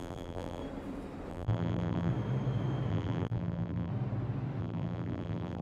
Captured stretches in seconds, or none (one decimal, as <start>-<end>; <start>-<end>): 0.6-1.3; 2.1-2.9; 3.9-4.6

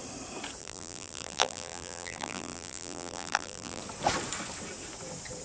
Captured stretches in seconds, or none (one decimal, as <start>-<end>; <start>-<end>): 0.0-0.6; 3.8-5.4